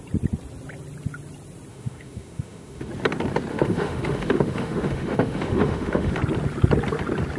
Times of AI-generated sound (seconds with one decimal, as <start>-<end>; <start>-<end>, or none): 1.7-2.9; 3.5-6.1